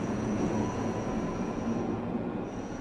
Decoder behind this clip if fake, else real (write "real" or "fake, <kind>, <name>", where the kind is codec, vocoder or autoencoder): fake, vocoder, Vocos